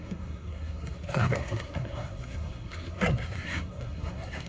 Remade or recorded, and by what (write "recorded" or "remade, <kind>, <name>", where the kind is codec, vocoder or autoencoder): remade, codec, SNAC